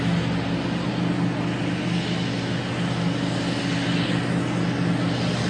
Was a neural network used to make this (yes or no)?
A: no